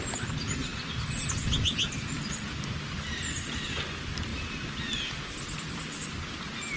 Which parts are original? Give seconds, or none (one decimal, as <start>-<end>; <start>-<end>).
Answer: 0.0-6.8